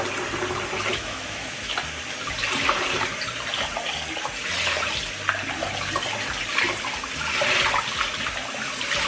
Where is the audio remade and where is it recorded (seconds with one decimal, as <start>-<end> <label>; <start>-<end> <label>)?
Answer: 0.0-0.9 recorded; 0.9-1.7 remade; 1.7-9.1 recorded